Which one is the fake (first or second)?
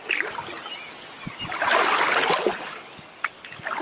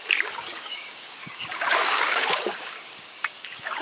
second